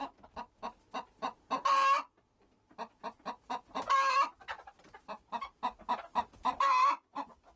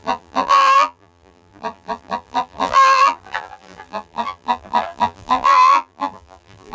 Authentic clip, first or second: first